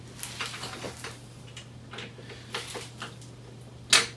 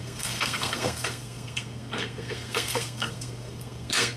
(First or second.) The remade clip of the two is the second